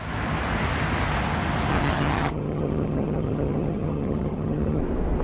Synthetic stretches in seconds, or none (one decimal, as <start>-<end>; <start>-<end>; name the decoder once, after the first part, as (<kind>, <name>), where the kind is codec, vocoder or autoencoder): 1.7-4.8 (vocoder, HiFi-GAN)